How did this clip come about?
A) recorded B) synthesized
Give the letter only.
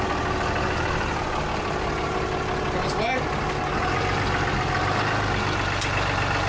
A